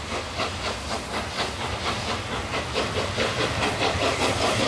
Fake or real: real